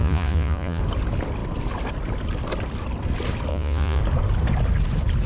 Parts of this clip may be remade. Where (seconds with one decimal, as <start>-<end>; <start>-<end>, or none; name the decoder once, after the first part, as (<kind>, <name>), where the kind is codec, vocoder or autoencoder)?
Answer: 0.0-0.8 (vocoder, Vocos); 3.5-4.0